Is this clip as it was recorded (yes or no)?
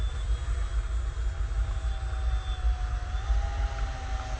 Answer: yes